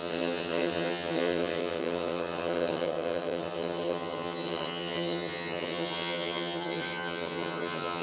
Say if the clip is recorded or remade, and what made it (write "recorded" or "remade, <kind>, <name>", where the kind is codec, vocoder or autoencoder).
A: remade, vocoder, HiFi-GAN